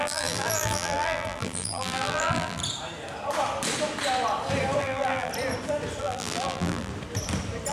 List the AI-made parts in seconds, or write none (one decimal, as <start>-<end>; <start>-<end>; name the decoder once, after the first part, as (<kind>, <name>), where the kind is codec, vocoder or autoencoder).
0.0-2.6 (vocoder, BigVGAN v2); 4.8-5.3; 6.0-6.9